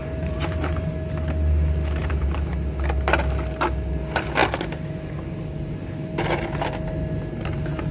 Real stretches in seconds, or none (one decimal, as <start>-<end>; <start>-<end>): 0.9-2.0; 2.5-7.9